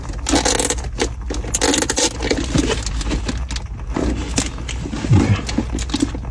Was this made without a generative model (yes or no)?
yes